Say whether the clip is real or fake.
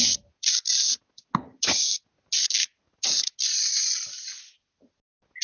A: real